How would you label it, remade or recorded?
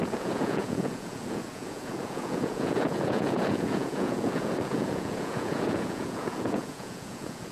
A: remade